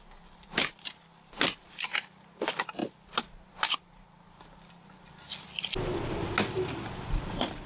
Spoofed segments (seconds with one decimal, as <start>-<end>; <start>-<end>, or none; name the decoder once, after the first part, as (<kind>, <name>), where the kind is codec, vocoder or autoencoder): none